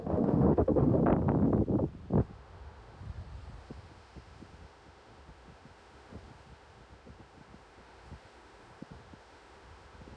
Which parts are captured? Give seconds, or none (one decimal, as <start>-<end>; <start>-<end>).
1.0-2.2; 3.0-3.6